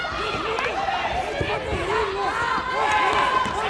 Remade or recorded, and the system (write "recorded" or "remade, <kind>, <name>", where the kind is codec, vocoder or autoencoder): recorded